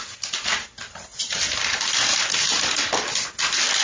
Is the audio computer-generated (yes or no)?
no